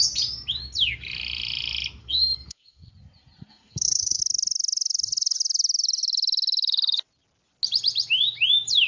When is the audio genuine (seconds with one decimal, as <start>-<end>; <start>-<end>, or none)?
0.0-2.0; 2.9-3.5; 4.2-8.9